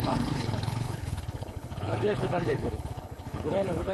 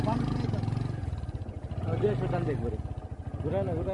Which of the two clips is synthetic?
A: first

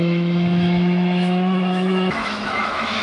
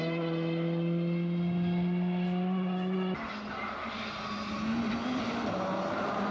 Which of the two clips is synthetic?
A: first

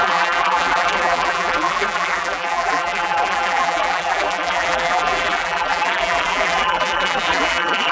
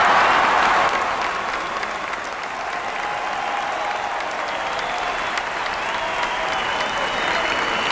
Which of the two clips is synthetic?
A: first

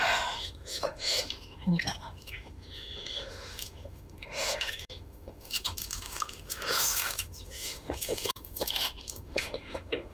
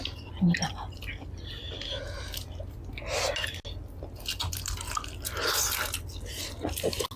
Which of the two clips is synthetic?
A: first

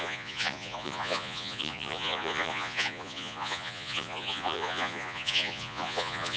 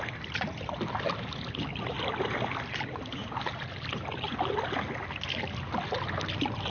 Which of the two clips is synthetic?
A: first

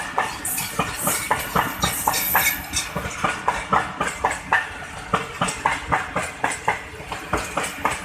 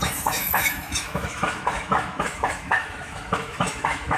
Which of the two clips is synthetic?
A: second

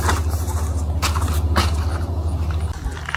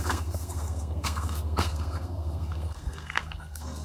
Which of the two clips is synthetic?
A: second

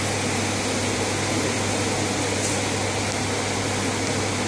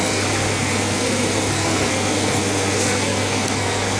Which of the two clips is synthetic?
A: second